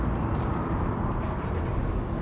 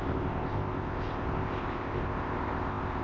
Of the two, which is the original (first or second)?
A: first